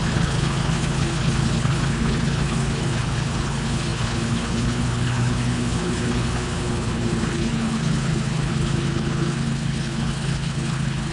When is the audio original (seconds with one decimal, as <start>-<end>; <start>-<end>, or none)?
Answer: none